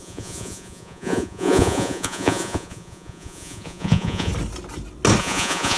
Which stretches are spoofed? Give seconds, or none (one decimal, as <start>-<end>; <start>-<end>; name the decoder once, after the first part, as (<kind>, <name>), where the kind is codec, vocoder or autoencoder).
0.0-4.3 (vocoder, Vocos); 5.2-5.8